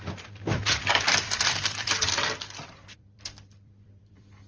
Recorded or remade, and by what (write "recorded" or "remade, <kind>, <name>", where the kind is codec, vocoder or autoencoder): remade, vocoder, BigVGAN v2